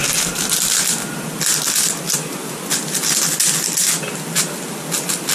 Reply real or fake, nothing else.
real